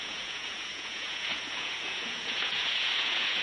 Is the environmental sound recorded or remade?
remade